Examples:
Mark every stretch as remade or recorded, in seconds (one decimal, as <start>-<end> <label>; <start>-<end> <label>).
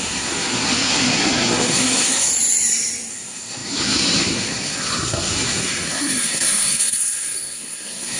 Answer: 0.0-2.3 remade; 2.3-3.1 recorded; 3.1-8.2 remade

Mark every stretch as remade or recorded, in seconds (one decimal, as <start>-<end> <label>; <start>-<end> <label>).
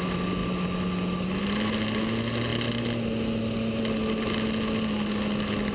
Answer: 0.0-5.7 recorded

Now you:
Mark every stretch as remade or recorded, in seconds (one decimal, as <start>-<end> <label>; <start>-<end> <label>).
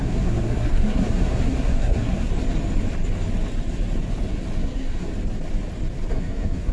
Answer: 0.0-2.3 remade; 2.3-4.6 recorded; 4.6-5.1 remade; 5.1-6.1 recorded; 6.1-6.7 remade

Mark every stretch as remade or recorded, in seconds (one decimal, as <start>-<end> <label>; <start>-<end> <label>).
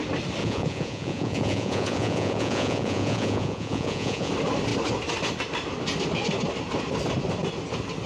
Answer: 0.0-0.4 recorded; 0.4-4.3 remade; 4.3-8.1 recorded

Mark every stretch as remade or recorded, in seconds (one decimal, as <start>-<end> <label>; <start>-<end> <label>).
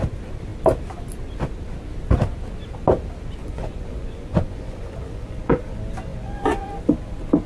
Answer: 0.0-3.4 recorded; 3.4-5.6 remade; 5.6-6.1 recorded; 6.1-6.7 remade; 6.7-7.5 recorded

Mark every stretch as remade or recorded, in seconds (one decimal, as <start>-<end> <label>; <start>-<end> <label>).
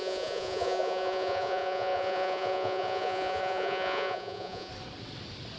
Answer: 0.0-4.7 remade; 4.7-5.6 recorded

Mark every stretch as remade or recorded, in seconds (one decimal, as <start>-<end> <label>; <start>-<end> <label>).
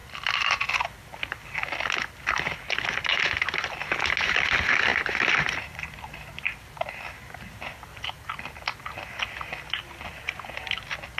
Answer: 0.0-3.1 recorded; 3.1-3.7 remade; 3.7-4.9 recorded; 4.9-6.9 remade; 6.9-11.2 recorded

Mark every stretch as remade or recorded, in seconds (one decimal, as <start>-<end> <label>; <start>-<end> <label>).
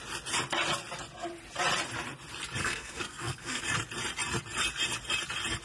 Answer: 0.0-2.6 recorded; 2.6-3.6 remade; 3.6-5.6 recorded